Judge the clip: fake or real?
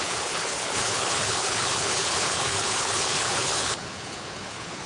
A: fake